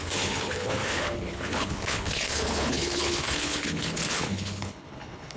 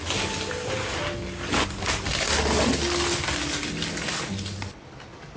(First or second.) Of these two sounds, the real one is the second